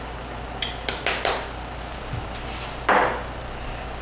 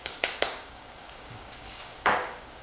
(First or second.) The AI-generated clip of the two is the second